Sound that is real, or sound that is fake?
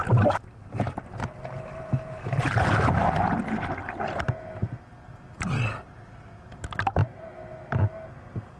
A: real